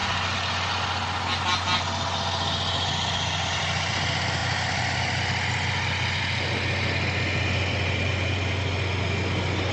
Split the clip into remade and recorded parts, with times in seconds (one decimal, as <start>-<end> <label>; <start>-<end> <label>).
0.0-9.7 recorded